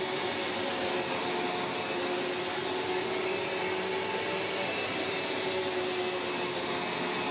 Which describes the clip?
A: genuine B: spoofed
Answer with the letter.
A